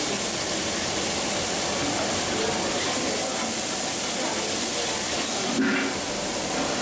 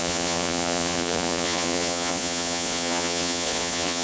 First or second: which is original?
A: first